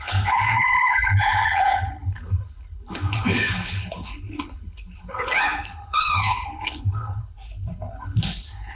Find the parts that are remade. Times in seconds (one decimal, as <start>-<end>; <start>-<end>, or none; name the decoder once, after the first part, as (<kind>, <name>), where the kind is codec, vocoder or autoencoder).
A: 0.0-8.8 (codec, HILCodec)